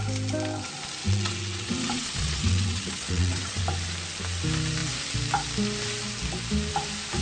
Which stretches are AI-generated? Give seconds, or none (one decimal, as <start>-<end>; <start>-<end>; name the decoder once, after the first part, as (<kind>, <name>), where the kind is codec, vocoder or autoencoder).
1.0-3.6 (vocoder, WaveNeXt)